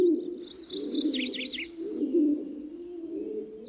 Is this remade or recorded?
recorded